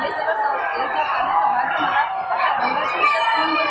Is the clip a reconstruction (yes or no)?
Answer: no